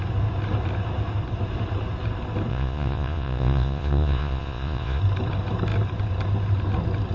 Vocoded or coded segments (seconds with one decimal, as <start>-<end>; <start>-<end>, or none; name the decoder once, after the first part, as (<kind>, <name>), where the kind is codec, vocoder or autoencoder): 2.5-5.0 (vocoder, Vocos)